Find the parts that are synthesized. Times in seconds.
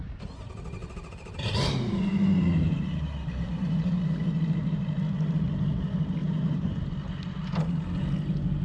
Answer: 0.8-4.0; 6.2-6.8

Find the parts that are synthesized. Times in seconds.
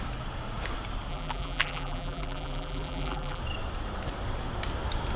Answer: 1.1-3.4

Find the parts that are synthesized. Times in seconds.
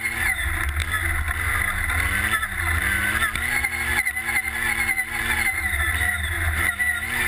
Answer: 0.0-0.8; 5.2-7.3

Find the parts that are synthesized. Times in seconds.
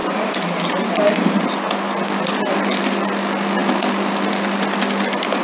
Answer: 0.0-1.4